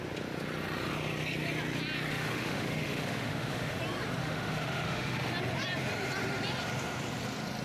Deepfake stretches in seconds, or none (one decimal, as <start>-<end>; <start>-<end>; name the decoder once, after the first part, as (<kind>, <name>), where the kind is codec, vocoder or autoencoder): 2.1-3.8 (autoencoder, DAC-VAE); 4.2-5.3